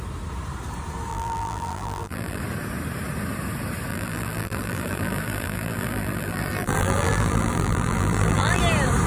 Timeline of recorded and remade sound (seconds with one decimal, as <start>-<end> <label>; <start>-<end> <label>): 0.0-1.1 recorded; 1.1-2.4 remade; 2.4-3.9 recorded; 3.9-8.6 remade; 8.6-9.1 recorded